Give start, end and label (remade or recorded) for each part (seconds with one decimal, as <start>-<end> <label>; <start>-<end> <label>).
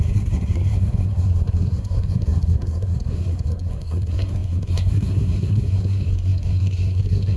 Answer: 0.0-7.4 remade